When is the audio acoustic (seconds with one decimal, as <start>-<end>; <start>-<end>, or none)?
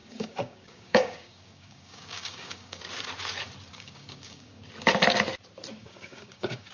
2.8-3.7; 4.6-5.8